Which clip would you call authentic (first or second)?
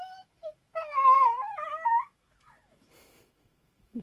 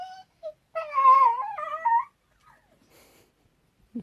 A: second